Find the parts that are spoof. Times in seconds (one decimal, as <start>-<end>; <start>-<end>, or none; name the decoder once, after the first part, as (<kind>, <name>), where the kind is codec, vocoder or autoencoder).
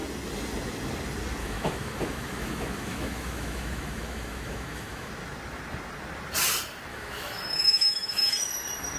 1.4-5.1 (autoencoder, DAC-VAE); 6.9-8.5